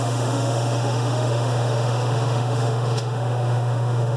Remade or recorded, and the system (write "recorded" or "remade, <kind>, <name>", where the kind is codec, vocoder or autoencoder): remade, autoencoder, DAC-VAE